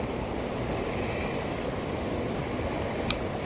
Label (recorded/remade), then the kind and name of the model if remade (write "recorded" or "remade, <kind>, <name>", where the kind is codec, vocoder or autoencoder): recorded